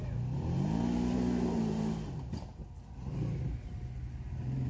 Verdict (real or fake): real